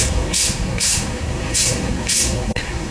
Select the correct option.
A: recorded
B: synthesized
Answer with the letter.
B